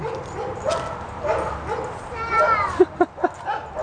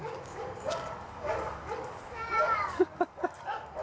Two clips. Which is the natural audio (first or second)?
first